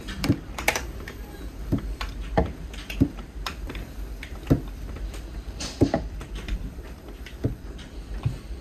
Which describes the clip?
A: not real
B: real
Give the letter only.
A